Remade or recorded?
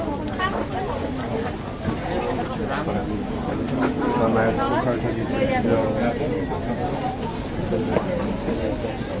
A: recorded